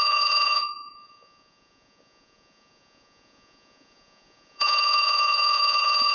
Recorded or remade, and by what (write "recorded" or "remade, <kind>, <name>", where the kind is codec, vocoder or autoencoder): remade, vocoder, Vocos